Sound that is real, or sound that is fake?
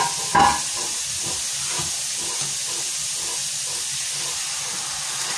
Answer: real